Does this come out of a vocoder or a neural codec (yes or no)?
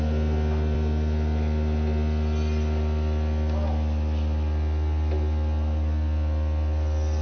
no